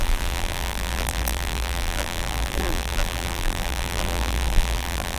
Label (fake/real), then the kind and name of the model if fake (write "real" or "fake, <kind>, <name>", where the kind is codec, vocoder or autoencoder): fake, vocoder, BigVGAN v2